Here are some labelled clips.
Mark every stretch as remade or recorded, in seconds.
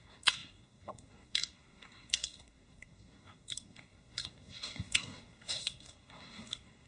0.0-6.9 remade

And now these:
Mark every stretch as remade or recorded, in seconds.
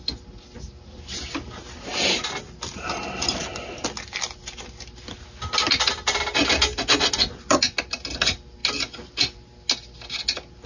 0.0-10.7 recorded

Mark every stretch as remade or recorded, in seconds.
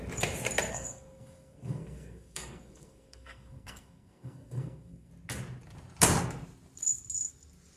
0.0-0.7 recorded; 0.7-5.1 remade; 5.1-7.8 recorded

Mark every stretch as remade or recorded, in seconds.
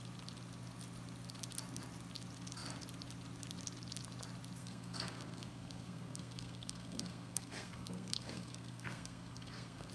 0.0-4.6 recorded; 4.6-9.9 remade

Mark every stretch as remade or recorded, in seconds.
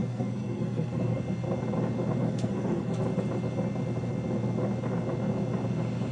0.0-1.2 remade; 1.2-2.2 recorded; 2.2-3.0 remade; 3.0-6.1 recorded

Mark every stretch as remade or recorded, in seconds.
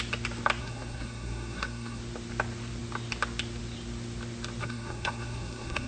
0.0-0.6 recorded; 0.6-2.0 remade; 2.0-4.6 recorded; 4.6-5.9 remade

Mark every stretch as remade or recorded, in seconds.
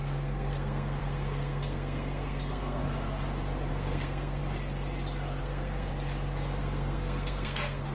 0.0-2.8 remade; 2.8-3.7 recorded; 3.7-4.4 remade; 4.4-5.4 recorded; 5.4-5.9 remade; 5.9-6.6 recorded; 6.6-7.9 remade